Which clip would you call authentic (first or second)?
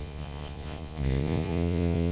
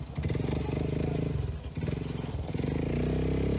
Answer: second